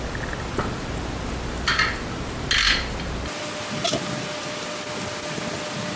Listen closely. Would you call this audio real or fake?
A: real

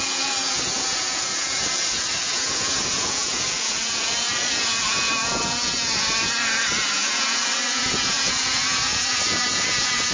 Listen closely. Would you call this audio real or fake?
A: fake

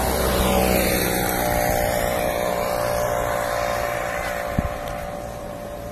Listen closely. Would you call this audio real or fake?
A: real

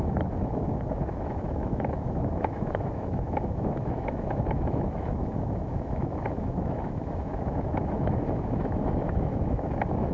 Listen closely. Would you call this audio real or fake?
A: fake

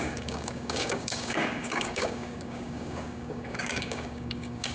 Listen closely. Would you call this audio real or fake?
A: fake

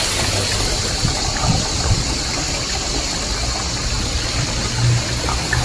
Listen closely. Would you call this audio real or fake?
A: real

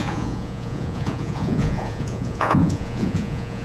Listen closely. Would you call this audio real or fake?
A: fake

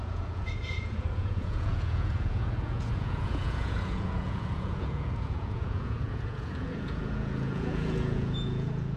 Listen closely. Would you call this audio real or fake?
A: fake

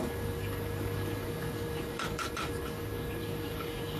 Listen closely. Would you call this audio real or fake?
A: fake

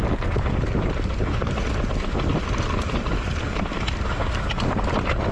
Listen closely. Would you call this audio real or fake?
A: real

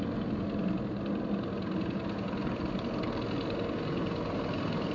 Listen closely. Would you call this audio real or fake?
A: real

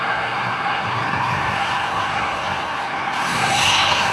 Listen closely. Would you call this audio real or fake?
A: fake